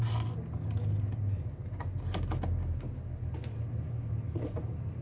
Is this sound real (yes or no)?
yes